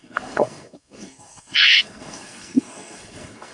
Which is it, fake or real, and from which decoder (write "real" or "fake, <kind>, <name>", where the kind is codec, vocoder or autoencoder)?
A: fake, codec, SNAC